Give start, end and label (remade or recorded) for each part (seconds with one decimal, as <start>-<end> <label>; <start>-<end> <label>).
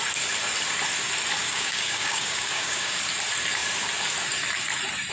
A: 0.0-1.4 recorded; 1.4-3.0 remade; 3.0-5.1 recorded